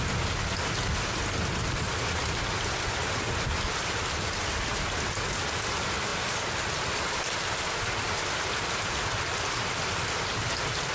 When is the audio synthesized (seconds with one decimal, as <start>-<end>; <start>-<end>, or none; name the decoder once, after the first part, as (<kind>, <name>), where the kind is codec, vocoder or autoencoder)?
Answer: none